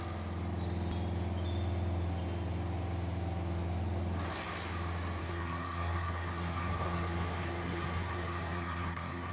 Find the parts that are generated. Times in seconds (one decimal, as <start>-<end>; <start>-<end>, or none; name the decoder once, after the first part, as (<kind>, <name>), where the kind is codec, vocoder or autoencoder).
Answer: 5.2-9.3 (codec, SNAC)